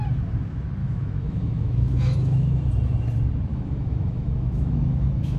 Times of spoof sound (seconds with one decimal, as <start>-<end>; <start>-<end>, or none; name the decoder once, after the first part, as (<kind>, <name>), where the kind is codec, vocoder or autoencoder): 0.8-2.7 (autoencoder, DAC-VAE); 3.5-5.4